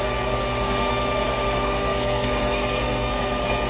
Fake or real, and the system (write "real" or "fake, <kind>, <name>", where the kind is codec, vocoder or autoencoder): fake, codec, SNAC